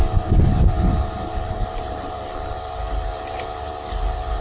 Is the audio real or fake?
fake